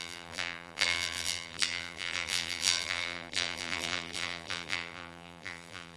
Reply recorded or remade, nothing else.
remade